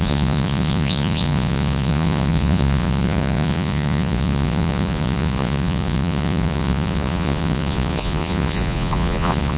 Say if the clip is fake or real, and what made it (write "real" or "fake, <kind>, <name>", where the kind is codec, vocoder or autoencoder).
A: fake, vocoder, Vocos